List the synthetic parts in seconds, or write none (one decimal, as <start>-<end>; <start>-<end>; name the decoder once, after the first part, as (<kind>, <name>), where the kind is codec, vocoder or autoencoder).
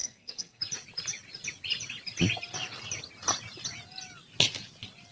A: 0.0-0.6 (codec, SNAC)